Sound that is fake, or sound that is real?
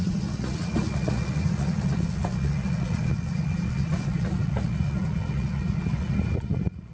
fake